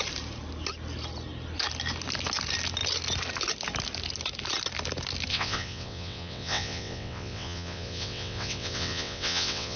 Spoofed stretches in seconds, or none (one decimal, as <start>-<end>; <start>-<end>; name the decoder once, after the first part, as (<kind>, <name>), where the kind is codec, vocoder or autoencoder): 5.3-9.8 (vocoder, WaveNeXt)